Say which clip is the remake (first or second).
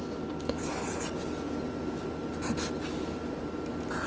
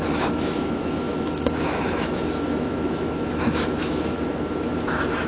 second